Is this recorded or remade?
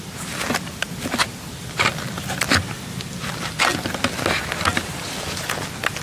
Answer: recorded